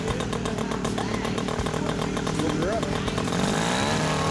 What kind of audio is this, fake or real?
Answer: real